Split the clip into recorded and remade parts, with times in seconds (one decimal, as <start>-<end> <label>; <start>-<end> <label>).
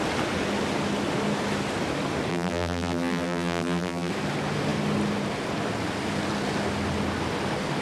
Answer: 0.0-2.3 recorded; 2.3-4.1 remade; 4.1-7.8 recorded